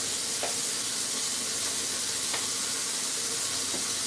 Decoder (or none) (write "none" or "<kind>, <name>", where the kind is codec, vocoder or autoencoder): none